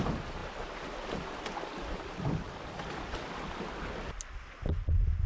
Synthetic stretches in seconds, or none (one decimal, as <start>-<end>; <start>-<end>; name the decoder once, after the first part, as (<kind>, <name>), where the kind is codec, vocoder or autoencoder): none